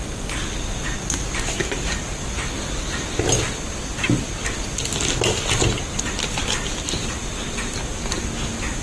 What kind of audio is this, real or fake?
real